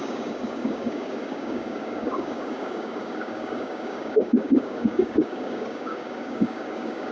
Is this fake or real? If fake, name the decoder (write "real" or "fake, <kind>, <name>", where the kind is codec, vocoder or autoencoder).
fake, codec, DAC